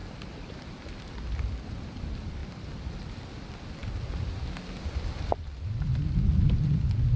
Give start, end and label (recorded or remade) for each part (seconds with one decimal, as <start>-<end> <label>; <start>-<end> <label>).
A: 0.0-7.2 recorded